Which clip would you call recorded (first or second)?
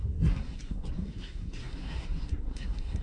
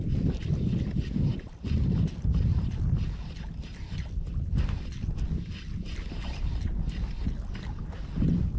second